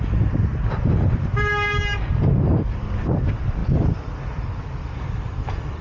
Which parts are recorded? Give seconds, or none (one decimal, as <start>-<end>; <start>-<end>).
0.0-5.8